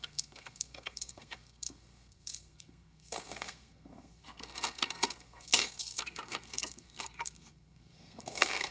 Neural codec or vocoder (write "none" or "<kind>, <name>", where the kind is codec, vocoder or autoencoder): codec, SNAC